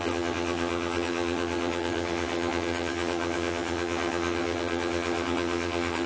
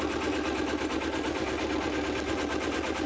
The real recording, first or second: second